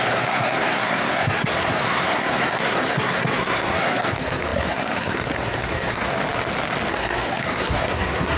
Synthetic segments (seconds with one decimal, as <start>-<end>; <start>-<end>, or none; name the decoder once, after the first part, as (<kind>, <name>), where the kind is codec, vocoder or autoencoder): 0.0-6.1 (codec, SNAC); 6.9-8.4